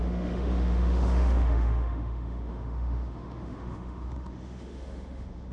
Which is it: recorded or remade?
remade